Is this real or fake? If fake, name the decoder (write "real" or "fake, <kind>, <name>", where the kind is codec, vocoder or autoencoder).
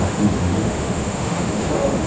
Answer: fake, autoencoder, DAC-VAE